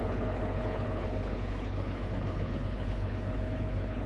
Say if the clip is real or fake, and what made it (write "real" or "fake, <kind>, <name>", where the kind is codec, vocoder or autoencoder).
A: fake, codec, HILCodec